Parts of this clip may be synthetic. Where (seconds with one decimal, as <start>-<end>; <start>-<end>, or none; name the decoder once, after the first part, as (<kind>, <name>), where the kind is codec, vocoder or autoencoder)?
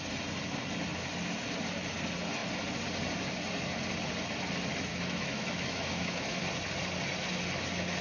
4.9-6.4 (autoencoder, DAC-VAE)